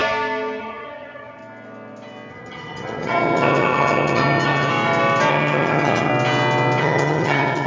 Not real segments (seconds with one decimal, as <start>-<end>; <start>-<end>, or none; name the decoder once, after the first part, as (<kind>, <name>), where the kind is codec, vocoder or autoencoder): 0.6-1.4 (vocoder, HiFi-GAN); 2.3-4.7; 5.3-6.1; 6.8-7.7

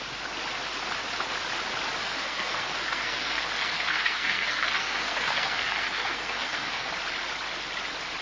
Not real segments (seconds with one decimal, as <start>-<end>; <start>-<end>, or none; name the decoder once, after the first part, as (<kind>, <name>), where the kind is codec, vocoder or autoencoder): 2.0-6.9 (codec, SNAC)

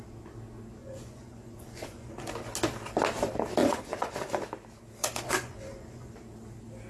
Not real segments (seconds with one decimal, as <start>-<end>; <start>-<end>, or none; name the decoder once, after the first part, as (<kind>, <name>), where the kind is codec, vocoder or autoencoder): 0.8-2.2 (vocoder, Vocos); 3.6-4.4; 5.0-6.1

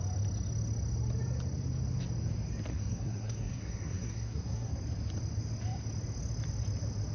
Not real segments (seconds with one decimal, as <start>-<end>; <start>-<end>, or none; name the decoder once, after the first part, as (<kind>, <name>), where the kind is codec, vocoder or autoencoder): 2.7-4.7 (codec, SNAC)

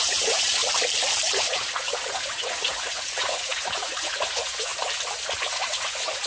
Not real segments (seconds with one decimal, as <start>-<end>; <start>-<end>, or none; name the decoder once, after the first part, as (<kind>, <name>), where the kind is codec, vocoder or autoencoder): 0.0-0.6 (vocoder, Vocos); 1.5-4.7; 5.4-6.3

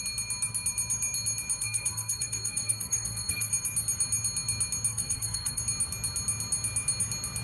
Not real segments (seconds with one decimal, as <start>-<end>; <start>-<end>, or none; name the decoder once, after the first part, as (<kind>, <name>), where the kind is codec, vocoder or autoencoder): 1.6-3.5 (codec, SNAC); 4.9-5.6

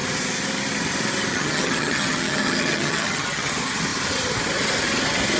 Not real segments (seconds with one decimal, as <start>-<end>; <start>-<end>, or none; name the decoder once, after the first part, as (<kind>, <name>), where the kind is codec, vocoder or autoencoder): 1.3-3.5 (vocoder, HiFi-GAN)

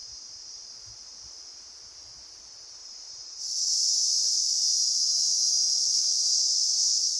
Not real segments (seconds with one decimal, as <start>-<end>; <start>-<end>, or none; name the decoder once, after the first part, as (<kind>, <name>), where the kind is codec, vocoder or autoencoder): 0.0-0.7 (vocoder, BigVGAN v2); 2.8-3.4